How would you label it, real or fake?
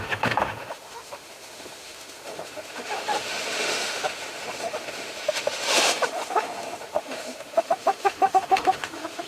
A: fake